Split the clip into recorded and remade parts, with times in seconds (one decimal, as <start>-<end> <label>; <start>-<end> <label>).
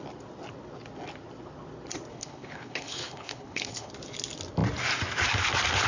0.0-2.1 recorded; 2.1-3.9 remade; 3.9-5.9 recorded